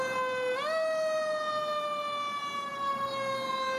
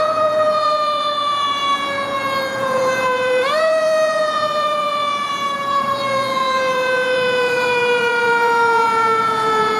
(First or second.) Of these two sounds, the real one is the first